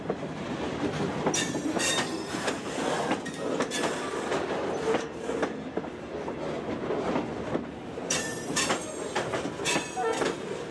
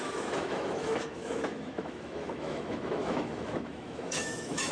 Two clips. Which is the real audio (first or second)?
first